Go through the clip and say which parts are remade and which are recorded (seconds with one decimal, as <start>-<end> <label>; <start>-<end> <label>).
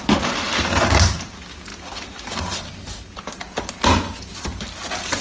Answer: 0.0-5.2 recorded